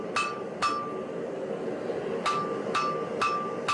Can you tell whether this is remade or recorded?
recorded